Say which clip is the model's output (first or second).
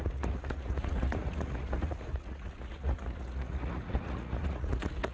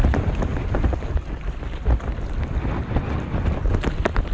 first